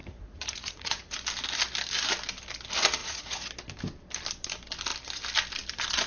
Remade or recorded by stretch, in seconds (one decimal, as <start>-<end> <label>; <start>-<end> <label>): 0.0-1.2 remade; 1.2-3.0 recorded; 3.0-3.5 remade; 3.5-6.1 recorded